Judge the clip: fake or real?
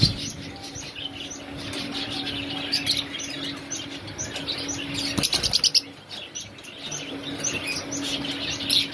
real